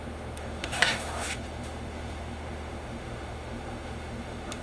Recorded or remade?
remade